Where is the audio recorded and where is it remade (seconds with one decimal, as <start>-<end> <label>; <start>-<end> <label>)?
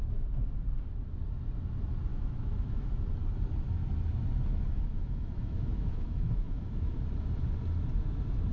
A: 0.0-2.1 recorded; 2.1-2.9 remade; 2.9-4.9 recorded; 4.9-7.0 remade; 7.0-8.5 recorded